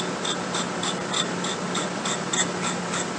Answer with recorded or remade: recorded